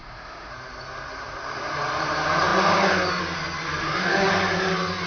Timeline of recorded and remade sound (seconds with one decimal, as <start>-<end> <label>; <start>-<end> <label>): 0.0-0.5 remade; 0.5-3.8 recorded; 3.8-4.3 remade; 4.3-5.1 recorded